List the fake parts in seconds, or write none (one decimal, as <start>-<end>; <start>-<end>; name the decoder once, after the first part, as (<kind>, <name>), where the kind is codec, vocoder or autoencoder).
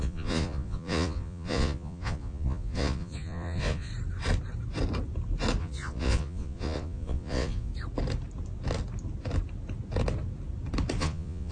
0.0-3.9 (vocoder, Vocos); 5.6-7.7; 11.0-11.5